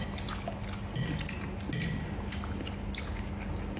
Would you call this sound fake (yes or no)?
no